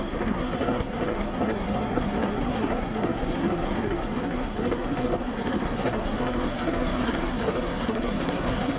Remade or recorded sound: remade